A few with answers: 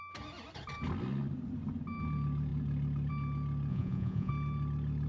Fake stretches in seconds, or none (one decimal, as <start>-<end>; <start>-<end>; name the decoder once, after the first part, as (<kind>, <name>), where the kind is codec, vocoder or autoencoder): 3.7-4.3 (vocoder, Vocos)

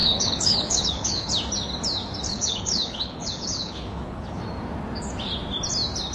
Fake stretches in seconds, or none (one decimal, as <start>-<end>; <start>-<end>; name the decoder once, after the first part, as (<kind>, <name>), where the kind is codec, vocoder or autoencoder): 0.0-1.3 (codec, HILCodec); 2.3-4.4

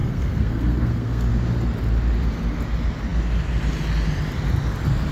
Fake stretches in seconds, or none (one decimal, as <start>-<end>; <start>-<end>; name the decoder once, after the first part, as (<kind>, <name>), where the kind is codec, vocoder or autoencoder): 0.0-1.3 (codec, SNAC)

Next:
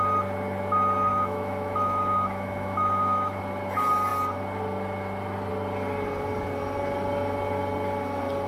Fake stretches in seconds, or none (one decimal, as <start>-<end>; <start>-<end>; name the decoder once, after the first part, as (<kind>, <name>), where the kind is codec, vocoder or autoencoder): 1.1-3.4 (autoencoder, DAC-VAE)

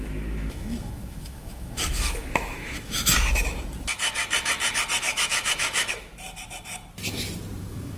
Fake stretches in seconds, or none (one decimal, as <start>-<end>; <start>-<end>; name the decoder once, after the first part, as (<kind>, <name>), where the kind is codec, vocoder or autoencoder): 0.0-3.1 (autoencoder, DAC-VAE); 5.0-6.1; 7.6-8.0

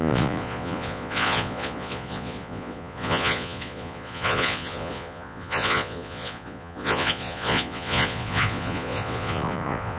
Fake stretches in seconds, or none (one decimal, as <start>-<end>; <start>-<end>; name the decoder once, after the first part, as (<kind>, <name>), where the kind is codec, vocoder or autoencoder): 0.0-10.0 (vocoder, Vocos)

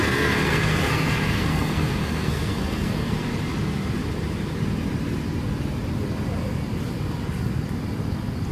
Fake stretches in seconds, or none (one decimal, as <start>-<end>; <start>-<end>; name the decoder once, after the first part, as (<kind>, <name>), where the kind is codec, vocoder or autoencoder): 0.0-3.3 (codec, SNAC)